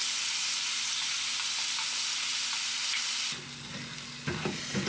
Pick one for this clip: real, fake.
real